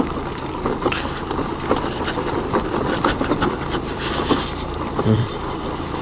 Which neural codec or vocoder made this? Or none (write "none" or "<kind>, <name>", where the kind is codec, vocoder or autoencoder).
vocoder, BigVGAN v2